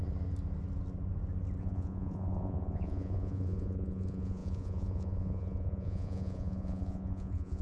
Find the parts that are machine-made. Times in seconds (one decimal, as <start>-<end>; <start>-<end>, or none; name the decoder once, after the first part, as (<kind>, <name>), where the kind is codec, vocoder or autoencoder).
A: 1.6-7.6 (vocoder, Vocos)